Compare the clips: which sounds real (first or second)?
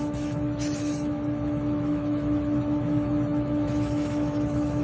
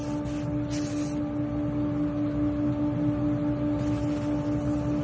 second